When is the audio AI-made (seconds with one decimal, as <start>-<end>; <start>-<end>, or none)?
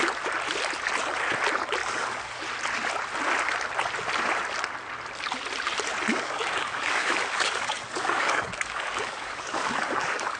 1.8-2.4; 6.1-10.4